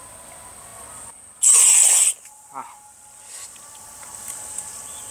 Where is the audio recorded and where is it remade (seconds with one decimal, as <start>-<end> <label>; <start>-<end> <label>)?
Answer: 0.0-5.1 recorded

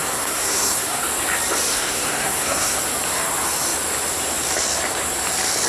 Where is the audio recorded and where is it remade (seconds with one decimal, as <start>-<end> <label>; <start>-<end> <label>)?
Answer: 0.0-1.0 remade; 1.0-1.7 recorded; 1.7-2.7 remade; 2.7-5.7 recorded

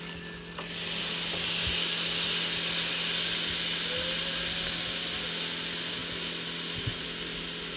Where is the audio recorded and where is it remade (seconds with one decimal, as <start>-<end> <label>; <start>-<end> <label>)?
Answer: 0.0-7.8 recorded

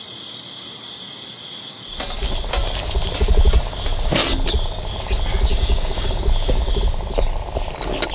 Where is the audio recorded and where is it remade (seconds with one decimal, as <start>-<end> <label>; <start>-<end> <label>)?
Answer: 0.0-5.5 recorded; 5.5-6.2 remade; 6.2-8.1 recorded

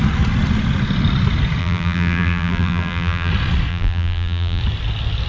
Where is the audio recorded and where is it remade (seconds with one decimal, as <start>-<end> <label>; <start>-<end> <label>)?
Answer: 0.0-1.6 recorded; 1.6-3.3 remade; 3.3-3.7 recorded; 3.7-4.6 remade; 4.6-5.3 recorded